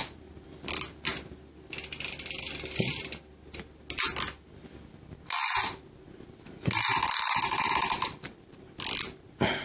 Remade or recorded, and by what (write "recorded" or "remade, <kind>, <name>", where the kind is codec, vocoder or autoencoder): recorded